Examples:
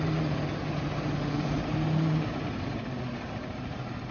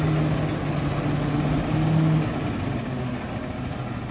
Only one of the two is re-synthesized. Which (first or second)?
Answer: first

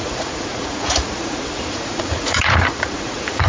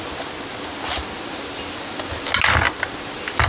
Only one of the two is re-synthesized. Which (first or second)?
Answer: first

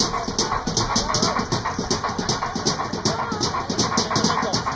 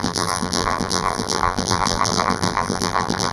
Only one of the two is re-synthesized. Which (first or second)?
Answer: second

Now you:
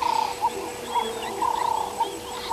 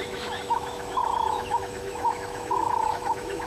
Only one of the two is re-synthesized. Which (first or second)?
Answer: second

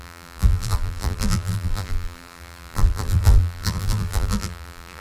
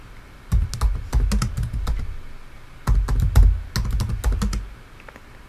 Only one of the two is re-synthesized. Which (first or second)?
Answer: first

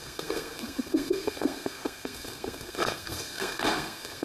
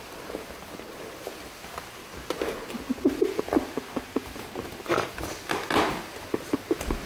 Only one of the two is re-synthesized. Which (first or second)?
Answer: first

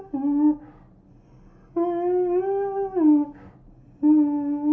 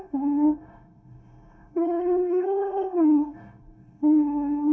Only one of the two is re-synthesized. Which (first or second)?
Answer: second